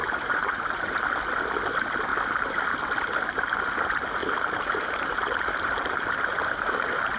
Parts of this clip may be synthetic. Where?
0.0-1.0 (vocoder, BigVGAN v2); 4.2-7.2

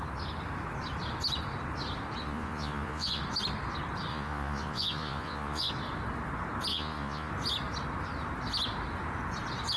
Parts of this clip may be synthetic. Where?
2.2-3.2 (vocoder, Vocos); 4.1-5.7; 6.7-7.3

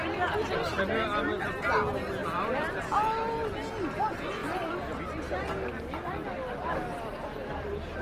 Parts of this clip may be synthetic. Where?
4.4-5.0 (vocoder, BigVGAN v2)

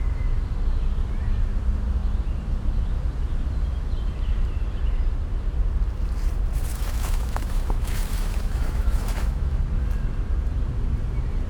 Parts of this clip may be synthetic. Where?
6.7-9.6 (autoencoder, DAC-VAE)

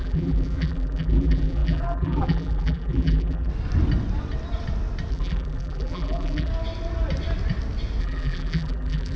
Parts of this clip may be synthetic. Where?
0.0-3.5 (vocoder, BigVGAN v2); 5.1-6.5; 8.0-9.2

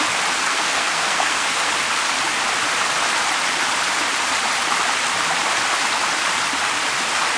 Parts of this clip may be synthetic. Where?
0.4-1.7 (codec, SNAC)

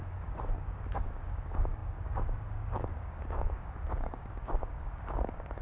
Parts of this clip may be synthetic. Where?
0.0-5.6 (codec, DAC)